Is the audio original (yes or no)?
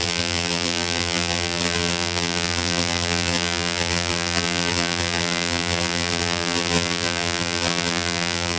no